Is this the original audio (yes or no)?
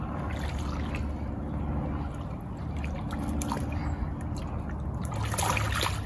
yes